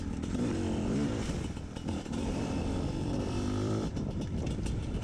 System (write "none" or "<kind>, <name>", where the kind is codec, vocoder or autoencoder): vocoder, BigVGAN v2